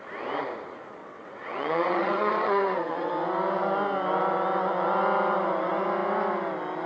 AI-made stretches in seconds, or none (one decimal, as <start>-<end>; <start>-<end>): 1.0-3.1

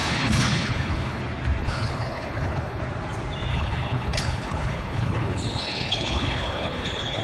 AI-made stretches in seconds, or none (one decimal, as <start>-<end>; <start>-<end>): 0.0-1.2; 1.6-2.8; 3.5-7.2

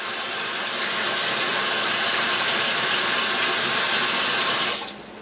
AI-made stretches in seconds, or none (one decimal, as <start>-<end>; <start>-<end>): none

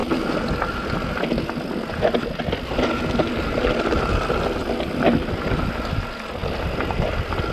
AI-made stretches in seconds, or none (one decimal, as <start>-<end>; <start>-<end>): none

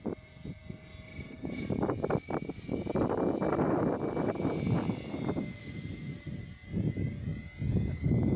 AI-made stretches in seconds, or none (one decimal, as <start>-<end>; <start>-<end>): 0.0-0.6; 5.6-7.3